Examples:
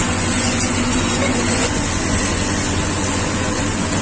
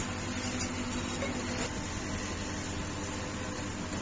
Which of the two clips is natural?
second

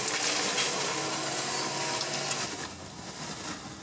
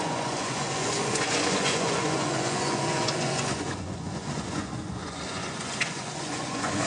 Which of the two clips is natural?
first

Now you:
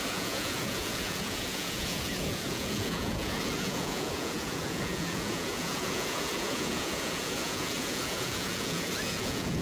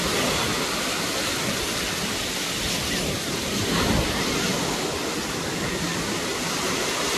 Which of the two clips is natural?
second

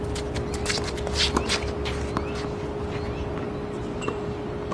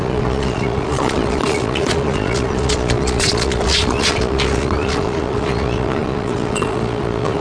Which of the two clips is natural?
first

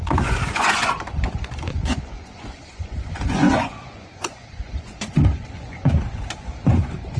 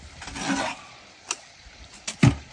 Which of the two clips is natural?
second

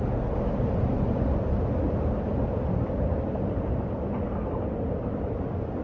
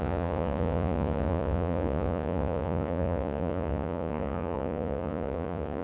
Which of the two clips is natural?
first